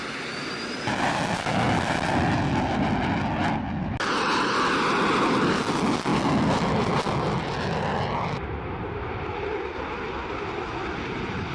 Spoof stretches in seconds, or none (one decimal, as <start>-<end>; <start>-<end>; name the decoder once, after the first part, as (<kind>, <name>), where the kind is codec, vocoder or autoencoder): none